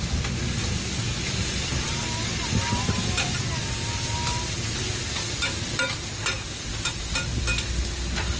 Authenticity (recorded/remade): recorded